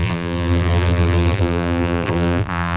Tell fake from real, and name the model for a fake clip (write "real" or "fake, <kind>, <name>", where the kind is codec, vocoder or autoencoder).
fake, vocoder, BigVGAN v2